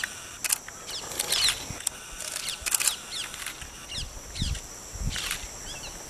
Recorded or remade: recorded